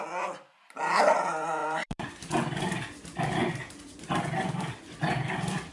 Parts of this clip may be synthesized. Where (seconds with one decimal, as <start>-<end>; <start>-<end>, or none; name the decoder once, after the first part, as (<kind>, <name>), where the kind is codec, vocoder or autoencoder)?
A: 1.6-2.6 (vocoder, BigVGAN v2); 3.4-4.1

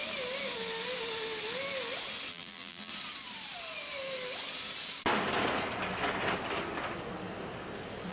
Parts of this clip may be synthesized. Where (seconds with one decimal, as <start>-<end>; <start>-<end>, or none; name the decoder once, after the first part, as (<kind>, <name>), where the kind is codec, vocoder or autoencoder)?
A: 2.3-2.9 (vocoder, BigVGAN v2)

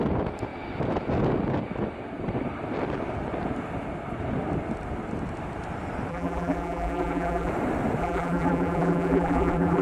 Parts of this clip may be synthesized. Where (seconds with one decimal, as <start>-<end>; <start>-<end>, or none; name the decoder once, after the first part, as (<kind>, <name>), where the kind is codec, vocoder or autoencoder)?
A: 6.1-7.5 (vocoder, BigVGAN v2); 8.0-9.8

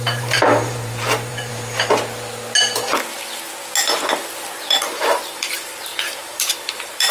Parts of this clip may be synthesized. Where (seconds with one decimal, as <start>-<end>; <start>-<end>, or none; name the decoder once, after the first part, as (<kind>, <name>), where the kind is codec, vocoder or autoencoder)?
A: 0.0-1.5 (vocoder, BigVGAN v2); 4.7-7.1

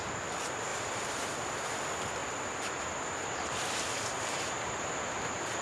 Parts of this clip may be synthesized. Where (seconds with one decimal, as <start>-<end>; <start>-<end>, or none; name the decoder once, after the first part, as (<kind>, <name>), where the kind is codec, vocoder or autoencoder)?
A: 0.7-1.7 (vocoder, BigVGAN v2); 2.2-5.6

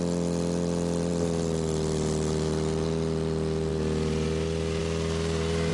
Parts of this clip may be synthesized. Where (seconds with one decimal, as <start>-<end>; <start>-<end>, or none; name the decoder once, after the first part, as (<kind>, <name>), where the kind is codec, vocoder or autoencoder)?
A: none